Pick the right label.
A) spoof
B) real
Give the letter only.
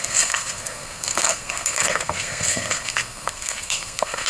A